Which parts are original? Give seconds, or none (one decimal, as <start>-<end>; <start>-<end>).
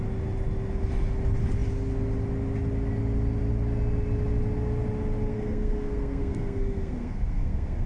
0.0-5.3